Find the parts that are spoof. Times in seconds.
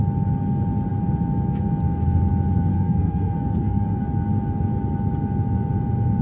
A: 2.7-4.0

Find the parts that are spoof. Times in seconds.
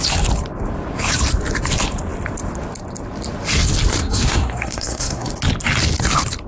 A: 4.0-5.3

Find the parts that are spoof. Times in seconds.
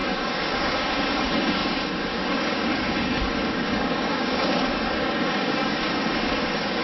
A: 0.0-6.8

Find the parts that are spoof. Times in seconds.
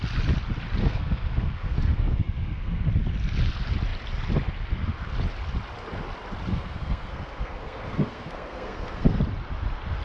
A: 0.8-2.9; 6.5-9.2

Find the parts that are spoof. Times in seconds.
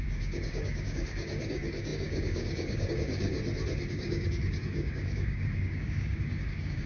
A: 0.0-3.3; 3.9-6.9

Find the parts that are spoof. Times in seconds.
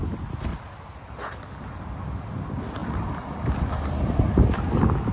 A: none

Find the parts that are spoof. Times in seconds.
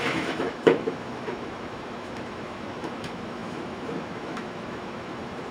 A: 0.0-5.5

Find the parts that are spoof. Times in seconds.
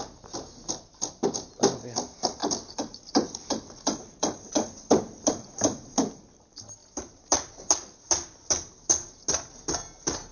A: none